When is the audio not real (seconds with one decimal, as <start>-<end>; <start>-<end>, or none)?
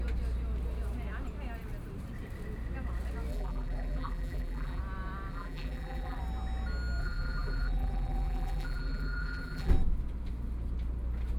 3.3-4.8; 5.3-6.2; 7.0-9.7